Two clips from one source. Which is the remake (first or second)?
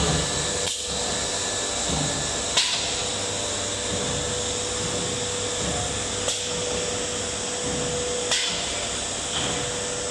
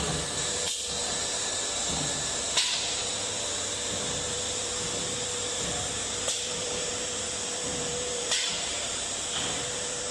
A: second